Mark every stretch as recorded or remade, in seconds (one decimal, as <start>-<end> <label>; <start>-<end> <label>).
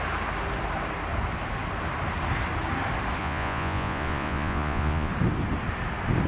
0.0-3.2 recorded; 3.2-5.1 remade; 5.1-6.3 recorded